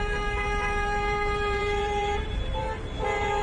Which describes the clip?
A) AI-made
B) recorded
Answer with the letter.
A